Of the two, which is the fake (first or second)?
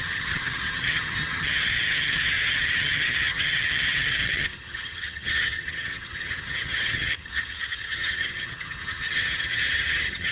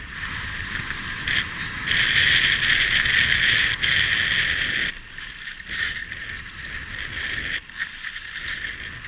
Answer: first